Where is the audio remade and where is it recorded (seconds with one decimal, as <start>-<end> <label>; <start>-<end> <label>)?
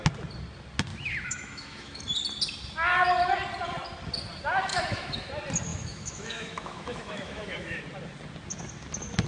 0.0-0.9 recorded; 0.9-2.0 remade; 2.0-4.7 recorded; 4.7-5.3 remade; 5.3-5.7 recorded; 5.7-7.8 remade; 7.8-9.3 recorded